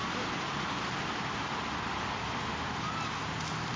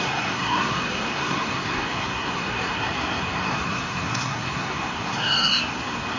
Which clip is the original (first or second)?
first